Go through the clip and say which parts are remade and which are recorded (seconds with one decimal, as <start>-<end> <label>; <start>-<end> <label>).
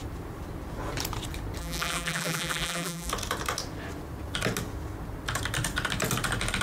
0.0-1.6 recorded; 1.6-3.1 remade; 3.1-6.6 recorded